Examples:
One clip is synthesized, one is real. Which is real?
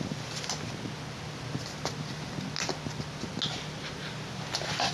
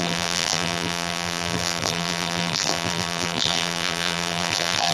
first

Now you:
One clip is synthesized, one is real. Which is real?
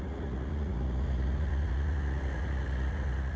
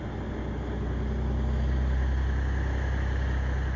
second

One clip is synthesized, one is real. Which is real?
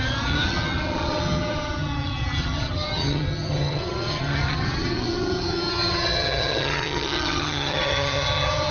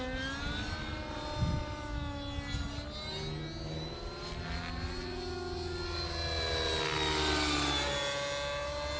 second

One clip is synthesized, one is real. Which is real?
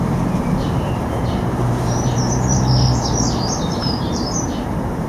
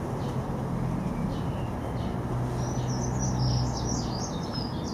second